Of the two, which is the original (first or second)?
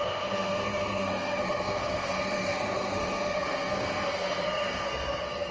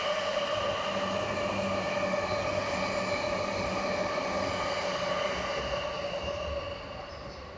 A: second